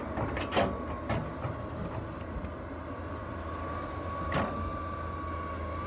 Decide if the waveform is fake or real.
real